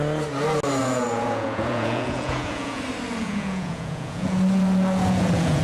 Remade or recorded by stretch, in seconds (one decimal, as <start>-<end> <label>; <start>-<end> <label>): 0.0-0.8 recorded; 0.8-2.8 remade; 2.8-3.2 recorded; 3.2-5.6 remade